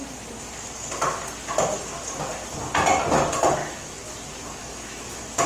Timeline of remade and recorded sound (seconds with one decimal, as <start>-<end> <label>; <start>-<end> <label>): 0.0-3.6 recorded; 3.6-4.1 remade; 4.1-4.6 recorded; 4.6-5.5 remade